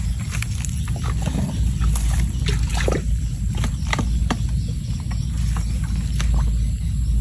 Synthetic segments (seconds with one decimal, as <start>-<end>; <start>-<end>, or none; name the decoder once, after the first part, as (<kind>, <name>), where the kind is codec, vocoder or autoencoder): none